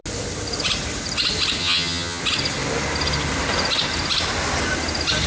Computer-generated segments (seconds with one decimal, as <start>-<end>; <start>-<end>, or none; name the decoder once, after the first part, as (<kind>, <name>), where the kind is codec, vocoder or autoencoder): 1.6-2.2 (vocoder, HiFi-GAN)